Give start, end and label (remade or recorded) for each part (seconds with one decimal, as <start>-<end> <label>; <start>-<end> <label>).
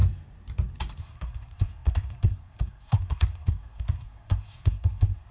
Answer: 0.0-1.0 recorded; 1.0-5.3 remade